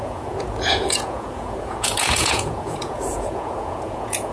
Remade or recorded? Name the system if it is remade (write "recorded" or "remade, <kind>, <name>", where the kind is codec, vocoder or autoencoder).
remade, vocoder, Vocos